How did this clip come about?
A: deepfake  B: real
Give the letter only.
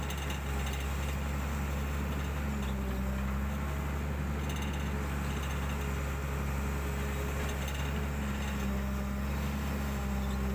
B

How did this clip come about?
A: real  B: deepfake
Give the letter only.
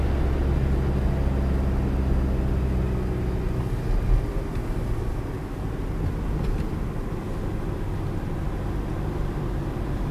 A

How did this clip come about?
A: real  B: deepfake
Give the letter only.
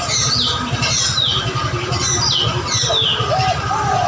A